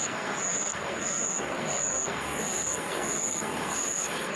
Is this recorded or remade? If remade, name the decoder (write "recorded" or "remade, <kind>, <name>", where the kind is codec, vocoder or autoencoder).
remade, codec, SNAC